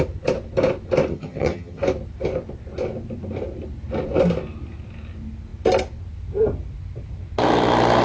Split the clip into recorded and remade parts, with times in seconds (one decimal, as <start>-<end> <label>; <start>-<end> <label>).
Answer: 0.0-1.1 recorded; 1.1-1.8 remade; 1.8-8.0 recorded